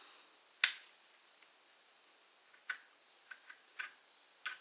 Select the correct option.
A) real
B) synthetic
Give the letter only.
A